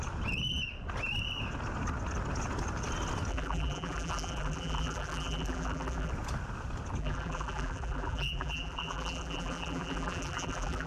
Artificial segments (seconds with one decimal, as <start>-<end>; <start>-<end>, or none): 3.3-6.1; 7.0-10.9